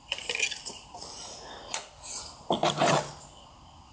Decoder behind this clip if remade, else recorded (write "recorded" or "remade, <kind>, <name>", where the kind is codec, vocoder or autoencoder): recorded